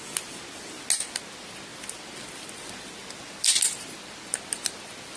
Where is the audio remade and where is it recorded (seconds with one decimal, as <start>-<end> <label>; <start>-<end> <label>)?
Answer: 0.0-5.2 recorded

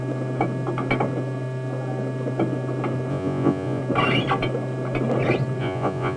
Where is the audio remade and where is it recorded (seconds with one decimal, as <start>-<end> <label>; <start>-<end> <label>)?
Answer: 0.0-3.1 recorded; 3.1-3.8 remade; 3.8-5.6 recorded; 5.6-6.2 remade